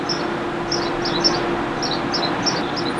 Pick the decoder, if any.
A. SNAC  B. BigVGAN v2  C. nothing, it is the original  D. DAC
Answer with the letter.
C